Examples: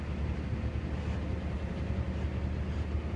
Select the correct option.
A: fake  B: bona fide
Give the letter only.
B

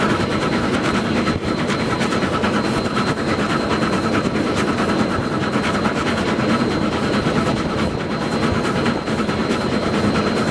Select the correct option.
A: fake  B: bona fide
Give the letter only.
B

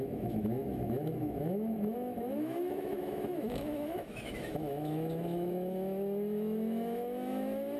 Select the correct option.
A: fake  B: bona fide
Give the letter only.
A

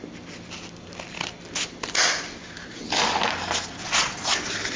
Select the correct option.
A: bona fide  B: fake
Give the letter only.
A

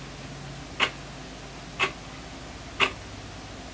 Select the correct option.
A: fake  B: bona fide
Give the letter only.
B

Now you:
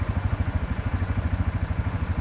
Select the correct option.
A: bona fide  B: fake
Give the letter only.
B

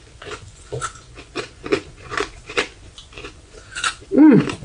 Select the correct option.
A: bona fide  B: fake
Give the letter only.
B